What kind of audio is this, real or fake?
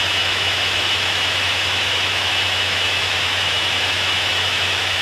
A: fake